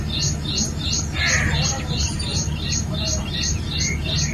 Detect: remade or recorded recorded